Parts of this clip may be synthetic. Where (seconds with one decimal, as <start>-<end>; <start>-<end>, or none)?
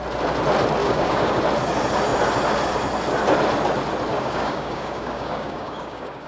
0.8-1.4; 4.1-6.3